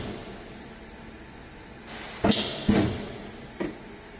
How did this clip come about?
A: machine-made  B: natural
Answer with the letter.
B